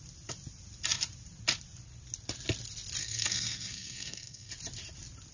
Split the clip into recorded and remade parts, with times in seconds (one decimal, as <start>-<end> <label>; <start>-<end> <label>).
0.0-3.0 recorded; 3.0-4.5 remade; 4.5-5.3 recorded